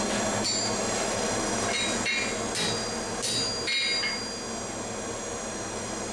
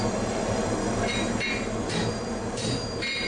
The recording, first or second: first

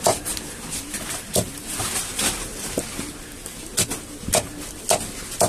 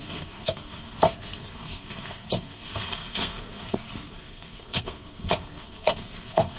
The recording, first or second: first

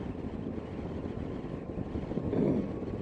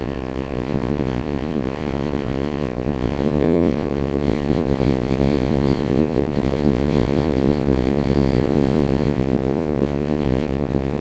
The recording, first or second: first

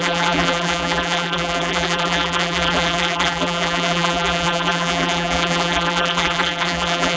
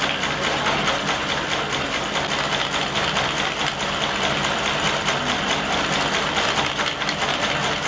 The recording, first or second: second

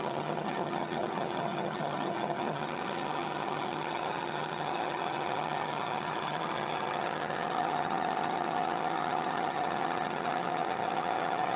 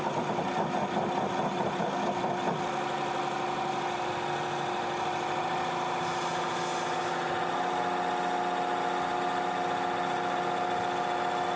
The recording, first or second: second